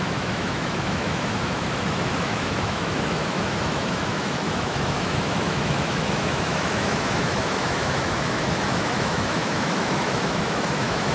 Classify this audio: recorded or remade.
remade